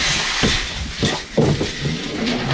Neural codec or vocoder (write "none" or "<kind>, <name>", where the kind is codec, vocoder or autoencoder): vocoder, BigVGAN v2